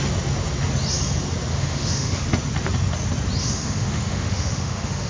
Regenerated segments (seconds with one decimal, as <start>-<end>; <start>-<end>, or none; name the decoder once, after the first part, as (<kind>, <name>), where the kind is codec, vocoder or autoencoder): 1.5-2.2 (autoencoder, DAC-VAE); 3.4-5.1